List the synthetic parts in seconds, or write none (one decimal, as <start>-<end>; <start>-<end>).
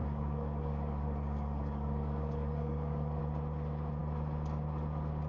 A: 0.0-3.2